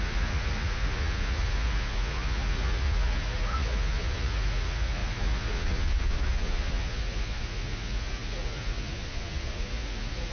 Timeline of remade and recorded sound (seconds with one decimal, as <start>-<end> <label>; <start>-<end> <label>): 0.0-10.3 remade